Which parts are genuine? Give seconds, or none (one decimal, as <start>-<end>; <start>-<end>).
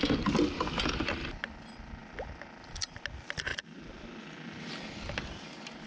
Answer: 0.0-5.9